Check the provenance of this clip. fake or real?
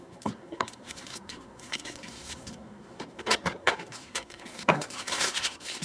fake